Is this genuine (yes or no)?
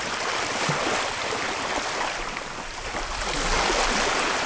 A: yes